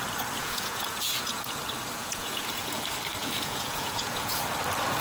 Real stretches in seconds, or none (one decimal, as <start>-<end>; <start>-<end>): 0.0-0.4; 1.6-2.0; 2.8-3.2; 4.4-5.0